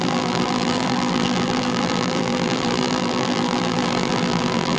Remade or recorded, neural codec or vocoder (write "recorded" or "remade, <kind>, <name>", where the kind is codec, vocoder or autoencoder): remade, vocoder, BigVGAN v2